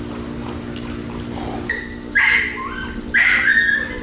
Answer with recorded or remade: recorded